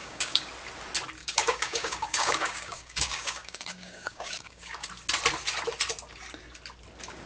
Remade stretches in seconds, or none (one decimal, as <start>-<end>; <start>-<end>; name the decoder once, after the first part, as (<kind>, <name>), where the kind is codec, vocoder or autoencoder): 0.0-0.5 (codec, DAC); 1.2-4.9